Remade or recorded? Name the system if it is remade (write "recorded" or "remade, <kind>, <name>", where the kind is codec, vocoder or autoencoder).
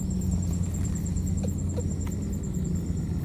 recorded